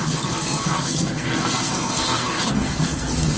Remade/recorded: remade